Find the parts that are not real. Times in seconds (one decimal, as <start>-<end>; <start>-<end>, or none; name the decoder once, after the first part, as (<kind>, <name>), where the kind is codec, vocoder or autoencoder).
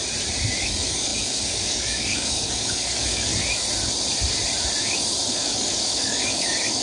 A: 0.6-3.3 (codec, DAC); 5.3-6.8